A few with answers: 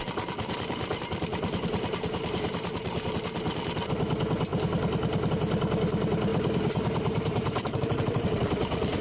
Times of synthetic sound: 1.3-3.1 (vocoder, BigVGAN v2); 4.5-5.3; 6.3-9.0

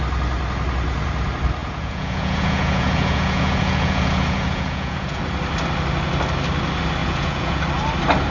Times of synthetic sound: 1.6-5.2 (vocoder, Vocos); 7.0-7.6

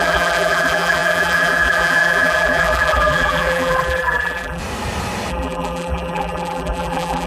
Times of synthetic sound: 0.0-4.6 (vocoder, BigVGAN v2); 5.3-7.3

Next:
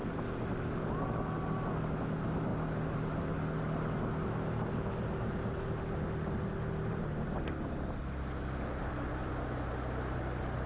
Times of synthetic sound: none

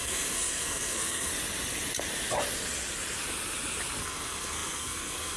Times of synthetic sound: 0.0-1.3 (codec, SNAC); 4.0-5.4

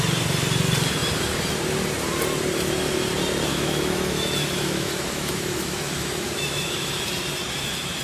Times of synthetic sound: 3.5-7.0 (autoencoder, DAC-VAE)

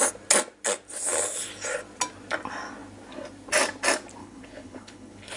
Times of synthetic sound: 4.2-5.4 (codec, HILCodec)